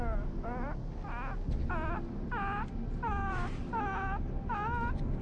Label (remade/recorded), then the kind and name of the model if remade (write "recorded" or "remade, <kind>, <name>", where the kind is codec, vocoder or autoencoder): recorded